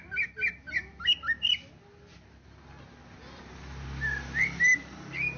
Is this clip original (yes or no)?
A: yes